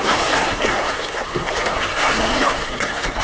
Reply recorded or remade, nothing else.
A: remade